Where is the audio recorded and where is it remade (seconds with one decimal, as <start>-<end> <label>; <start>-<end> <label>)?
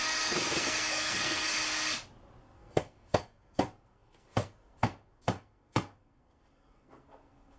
0.0-1.6 remade; 1.6-2.4 recorded; 2.4-7.6 remade